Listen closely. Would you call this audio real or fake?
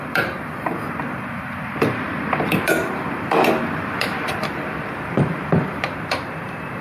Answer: fake